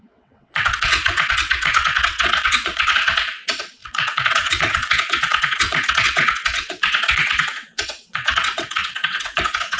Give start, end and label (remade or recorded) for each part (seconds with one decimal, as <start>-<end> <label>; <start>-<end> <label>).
0.0-9.8 remade